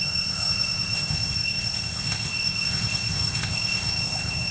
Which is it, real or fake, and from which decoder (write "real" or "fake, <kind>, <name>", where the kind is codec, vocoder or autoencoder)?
fake, codec, ZipCodec